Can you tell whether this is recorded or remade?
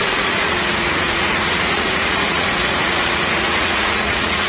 remade